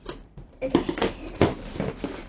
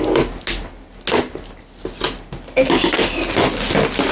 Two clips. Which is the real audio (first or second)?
second